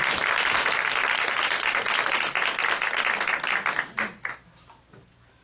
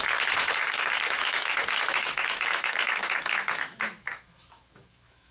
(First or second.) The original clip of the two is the first